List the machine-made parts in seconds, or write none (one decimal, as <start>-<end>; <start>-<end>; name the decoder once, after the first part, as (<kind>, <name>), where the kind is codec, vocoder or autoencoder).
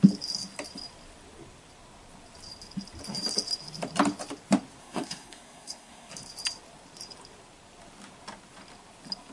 4.8-6.1 (codec, SNAC)